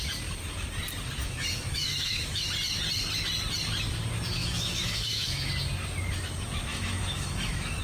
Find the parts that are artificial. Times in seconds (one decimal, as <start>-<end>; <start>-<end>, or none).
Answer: 1.2-2.5; 4.4-5.5; 6.7-7.8